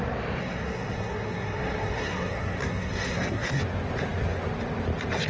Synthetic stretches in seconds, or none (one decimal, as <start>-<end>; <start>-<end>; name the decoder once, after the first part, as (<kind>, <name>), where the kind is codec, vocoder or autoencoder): 0.4-3.6 (codec, SNAC)